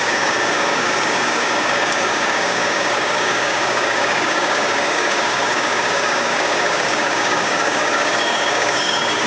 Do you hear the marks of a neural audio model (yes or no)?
yes